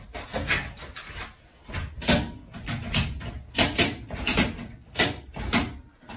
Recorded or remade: recorded